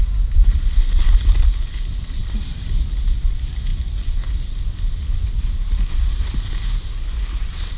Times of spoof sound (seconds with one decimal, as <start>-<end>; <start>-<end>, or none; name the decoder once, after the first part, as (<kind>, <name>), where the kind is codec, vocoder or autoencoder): none